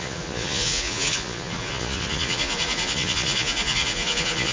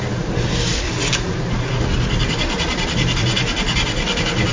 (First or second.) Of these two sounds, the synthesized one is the first